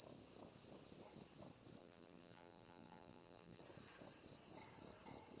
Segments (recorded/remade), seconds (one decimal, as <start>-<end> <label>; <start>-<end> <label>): 0.0-1.8 recorded; 1.8-3.6 remade; 3.6-5.4 recorded